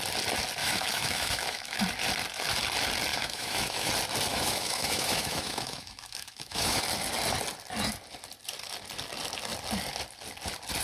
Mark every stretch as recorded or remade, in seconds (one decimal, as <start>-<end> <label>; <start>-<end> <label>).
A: 0.0-0.6 recorded; 0.6-1.8 remade; 1.8-3.1 recorded; 3.1-3.9 remade; 3.9-4.3 recorded; 4.3-6.8 remade; 6.8-10.8 recorded